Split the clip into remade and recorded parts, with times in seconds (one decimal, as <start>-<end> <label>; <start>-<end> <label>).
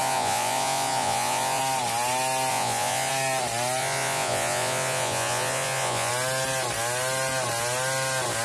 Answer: 0.0-1.6 remade; 1.6-2.5 recorded; 2.5-3.1 remade; 3.1-3.8 recorded; 3.8-6.1 remade; 6.1-8.4 recorded